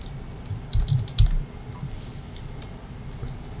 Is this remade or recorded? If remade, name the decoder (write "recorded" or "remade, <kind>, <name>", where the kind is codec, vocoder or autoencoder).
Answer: recorded